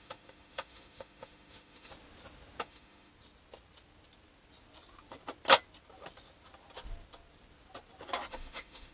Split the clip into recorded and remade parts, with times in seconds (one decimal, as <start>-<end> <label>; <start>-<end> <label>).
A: 0.0-1.9 remade; 1.9-2.6 recorded; 2.6-3.1 remade; 3.1-8.3 recorded; 8.3-8.9 remade